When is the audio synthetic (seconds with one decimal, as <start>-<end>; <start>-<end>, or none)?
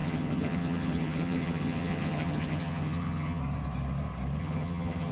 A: 0.0-3.4; 4.4-5.1